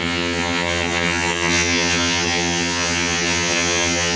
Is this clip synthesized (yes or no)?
yes